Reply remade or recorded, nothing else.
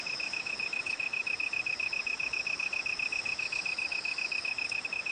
remade